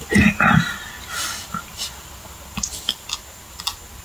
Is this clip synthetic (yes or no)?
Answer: no